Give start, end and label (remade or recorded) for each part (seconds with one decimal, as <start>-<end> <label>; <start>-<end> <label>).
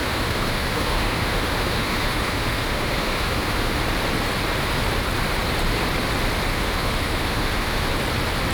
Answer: 0.0-3.8 remade; 3.8-6.5 recorded; 6.5-7.9 remade; 7.9-8.5 recorded